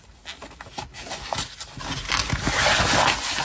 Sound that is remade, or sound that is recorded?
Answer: recorded